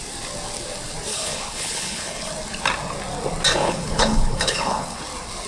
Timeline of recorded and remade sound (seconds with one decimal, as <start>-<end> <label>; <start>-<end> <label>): 0.0-1.1 recorded; 1.1-2.3 remade; 2.3-3.6 recorded; 3.6-5.0 remade; 5.0-5.5 recorded